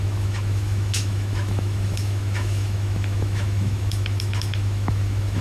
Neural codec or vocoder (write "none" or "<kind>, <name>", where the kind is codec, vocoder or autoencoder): autoencoder, DAC-VAE